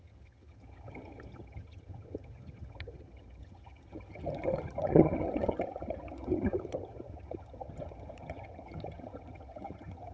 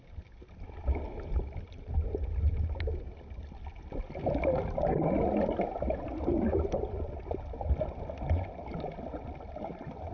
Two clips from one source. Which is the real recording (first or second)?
second